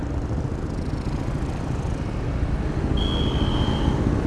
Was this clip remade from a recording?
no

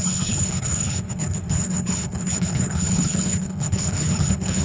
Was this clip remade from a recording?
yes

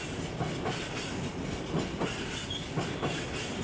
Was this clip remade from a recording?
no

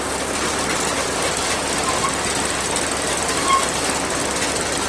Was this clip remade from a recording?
no